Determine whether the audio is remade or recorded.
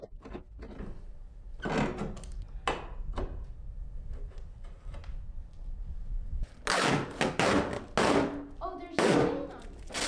recorded